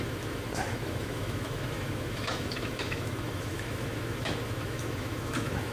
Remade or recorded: remade